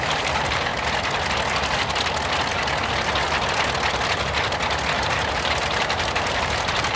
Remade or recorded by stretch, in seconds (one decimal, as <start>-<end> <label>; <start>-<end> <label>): 0.0-0.7 remade; 0.7-4.9 recorded; 4.9-7.0 remade